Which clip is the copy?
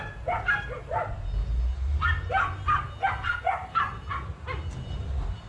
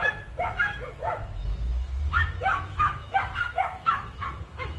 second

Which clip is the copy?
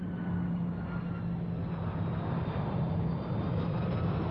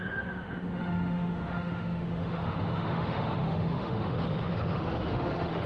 second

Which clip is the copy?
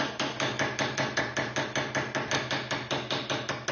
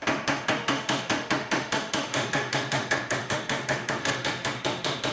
second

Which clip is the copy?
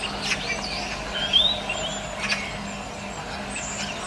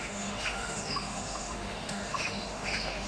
second